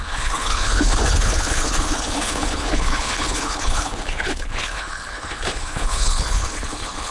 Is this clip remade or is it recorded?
remade